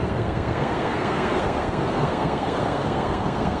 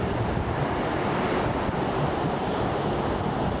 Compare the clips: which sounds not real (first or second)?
first